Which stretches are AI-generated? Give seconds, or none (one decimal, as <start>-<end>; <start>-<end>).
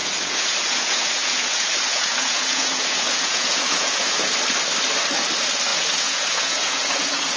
0.0-4.4; 5.7-7.4